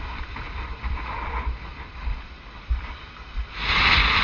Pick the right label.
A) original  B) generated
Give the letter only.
B